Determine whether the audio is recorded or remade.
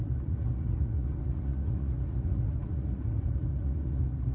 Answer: remade